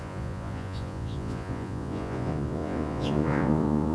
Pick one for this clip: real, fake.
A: fake